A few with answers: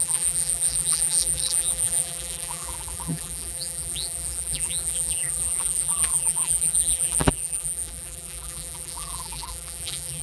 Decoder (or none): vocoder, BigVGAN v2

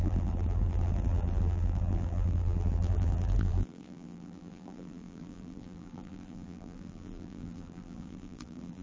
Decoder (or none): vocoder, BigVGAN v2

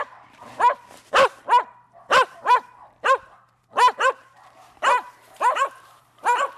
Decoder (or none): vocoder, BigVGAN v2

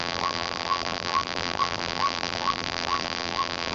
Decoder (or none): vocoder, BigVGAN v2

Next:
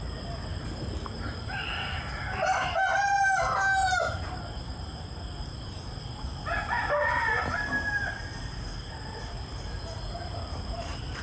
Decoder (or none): vocoder, BigVGAN v2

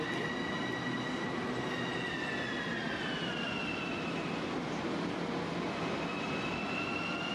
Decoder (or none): none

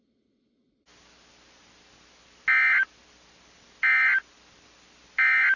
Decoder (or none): none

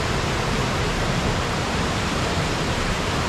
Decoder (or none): vocoder, BigVGAN v2